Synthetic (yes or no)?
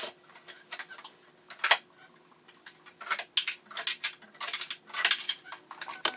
no